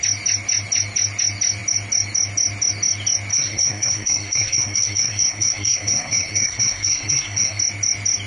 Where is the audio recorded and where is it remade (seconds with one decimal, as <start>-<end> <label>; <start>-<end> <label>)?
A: 0.0-3.3 recorded; 3.3-7.6 remade; 7.6-8.3 recorded